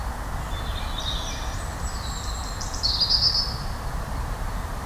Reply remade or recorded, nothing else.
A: recorded